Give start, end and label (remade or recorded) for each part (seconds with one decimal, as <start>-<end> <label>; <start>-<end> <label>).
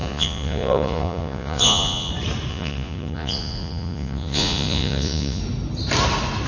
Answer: 0.0-2.1 remade; 2.1-2.5 recorded; 2.5-5.4 remade; 5.4-6.5 recorded